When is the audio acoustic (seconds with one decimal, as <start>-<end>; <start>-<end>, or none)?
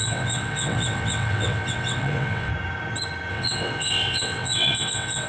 2.5-3.3